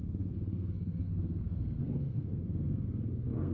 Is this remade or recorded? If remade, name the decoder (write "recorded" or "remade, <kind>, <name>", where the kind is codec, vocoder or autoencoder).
remade, codec, SNAC